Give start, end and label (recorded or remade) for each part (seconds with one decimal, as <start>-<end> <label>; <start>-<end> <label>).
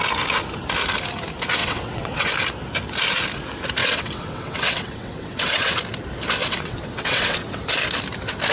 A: 0.0-1.6 recorded; 1.6-2.3 remade; 2.3-3.8 recorded; 3.8-5.8 remade; 5.8-6.4 recorded; 6.4-7.6 remade; 7.6-8.5 recorded